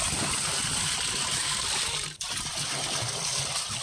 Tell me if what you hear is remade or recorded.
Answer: recorded